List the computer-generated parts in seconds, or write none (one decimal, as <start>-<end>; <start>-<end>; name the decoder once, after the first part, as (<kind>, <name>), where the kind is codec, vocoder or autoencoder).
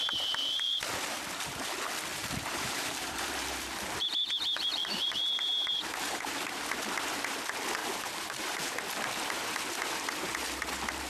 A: 2.1-4.3 (vocoder, BigVGAN v2); 4.8-6.6; 7.8-8.7